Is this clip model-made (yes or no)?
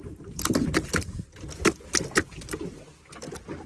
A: yes